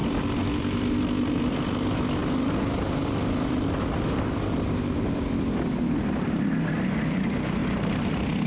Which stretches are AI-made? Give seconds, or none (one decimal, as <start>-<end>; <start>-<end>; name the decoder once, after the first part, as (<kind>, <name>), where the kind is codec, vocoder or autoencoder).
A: none